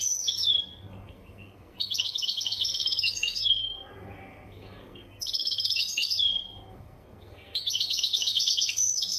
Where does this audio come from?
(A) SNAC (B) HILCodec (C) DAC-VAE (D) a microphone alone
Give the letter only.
A